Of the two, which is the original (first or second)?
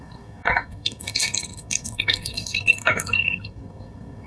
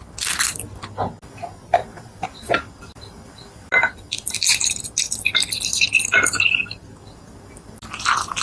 second